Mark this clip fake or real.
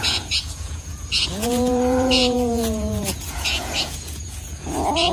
fake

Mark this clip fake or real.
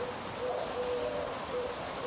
real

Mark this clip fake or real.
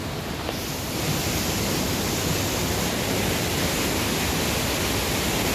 real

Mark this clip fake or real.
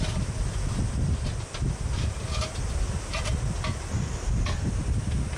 real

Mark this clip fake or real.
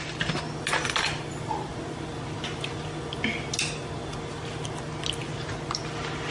real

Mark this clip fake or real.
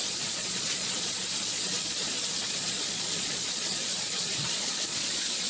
fake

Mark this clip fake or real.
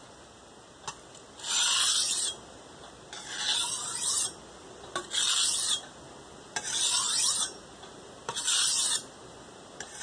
real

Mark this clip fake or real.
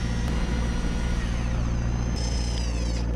real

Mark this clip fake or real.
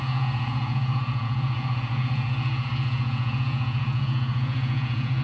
fake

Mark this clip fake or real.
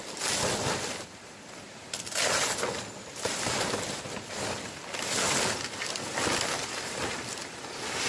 fake